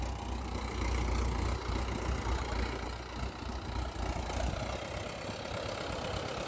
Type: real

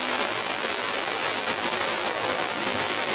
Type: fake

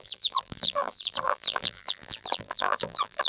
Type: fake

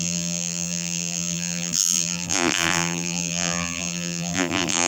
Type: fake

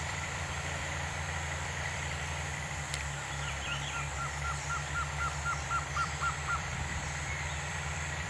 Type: fake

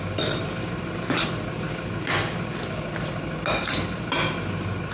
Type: real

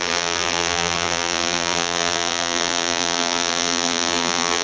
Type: fake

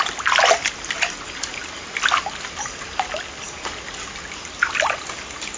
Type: real